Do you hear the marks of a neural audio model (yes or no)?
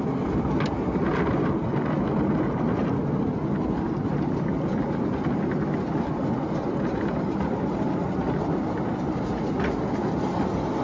no